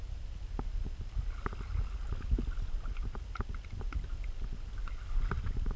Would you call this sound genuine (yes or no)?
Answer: yes